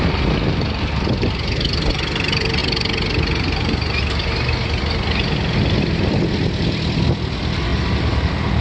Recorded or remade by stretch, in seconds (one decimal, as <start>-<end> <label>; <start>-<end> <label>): 0.0-8.6 recorded